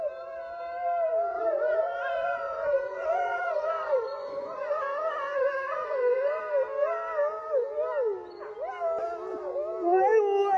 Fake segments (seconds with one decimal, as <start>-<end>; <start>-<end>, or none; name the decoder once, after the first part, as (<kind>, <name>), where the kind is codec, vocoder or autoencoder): 1.3-6.4 (vocoder, Vocos)